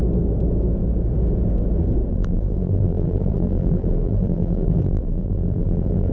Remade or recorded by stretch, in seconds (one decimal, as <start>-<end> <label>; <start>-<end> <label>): 0.0-2.1 recorded; 2.1-6.1 remade